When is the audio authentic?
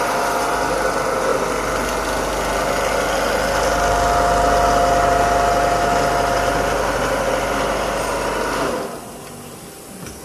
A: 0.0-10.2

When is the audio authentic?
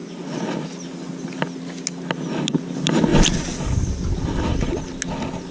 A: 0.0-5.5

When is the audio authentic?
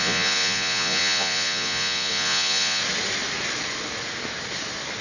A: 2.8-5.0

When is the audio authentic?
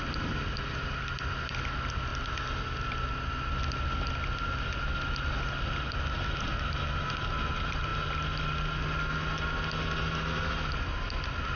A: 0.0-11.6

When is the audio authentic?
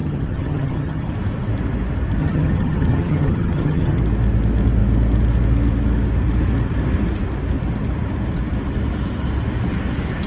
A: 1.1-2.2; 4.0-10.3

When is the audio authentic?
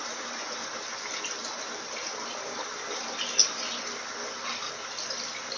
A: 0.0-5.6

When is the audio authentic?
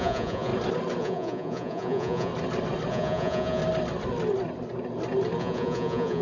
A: 0.5-1.0; 2.3-2.9; 3.6-5.4